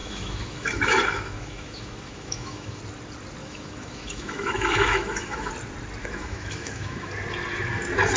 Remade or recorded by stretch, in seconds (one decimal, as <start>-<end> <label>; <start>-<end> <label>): 0.0-2.8 remade; 2.8-3.4 recorded; 3.4-5.5 remade; 5.5-6.0 recorded; 6.0-7.1 remade; 7.1-8.2 recorded